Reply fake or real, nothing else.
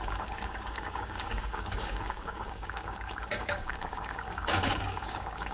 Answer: fake